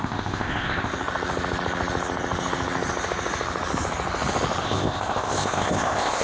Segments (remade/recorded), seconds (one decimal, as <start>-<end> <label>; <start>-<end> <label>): 0.0-0.9 remade; 0.9-4.6 recorded; 4.6-6.2 remade